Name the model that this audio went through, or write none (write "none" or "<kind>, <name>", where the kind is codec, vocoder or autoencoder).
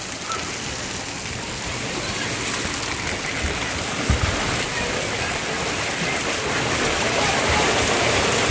none